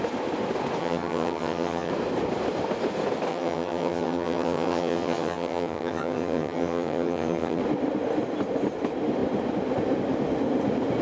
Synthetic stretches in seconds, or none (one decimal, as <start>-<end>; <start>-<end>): 0.8-1.9; 3.3-7.6